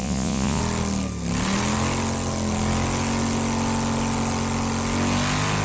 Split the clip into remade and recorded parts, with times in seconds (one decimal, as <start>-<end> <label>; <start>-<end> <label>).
0.0-0.6 remade; 0.6-5.6 recorded